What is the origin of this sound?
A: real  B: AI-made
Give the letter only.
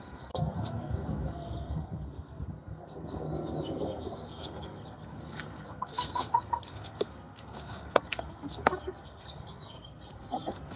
B